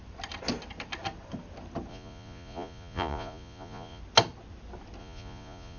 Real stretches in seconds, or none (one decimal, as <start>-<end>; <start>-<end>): 0.0-1.9; 4.0-5.0